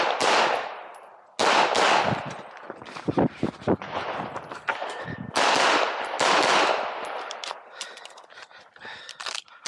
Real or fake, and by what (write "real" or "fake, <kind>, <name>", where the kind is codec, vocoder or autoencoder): real